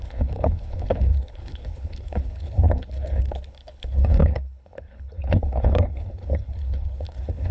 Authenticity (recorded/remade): remade